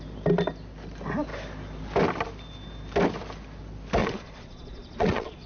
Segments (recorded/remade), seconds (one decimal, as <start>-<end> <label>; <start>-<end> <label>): 0.0-4.0 recorded; 4.0-5.5 remade